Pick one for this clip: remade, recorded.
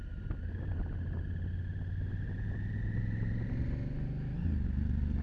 recorded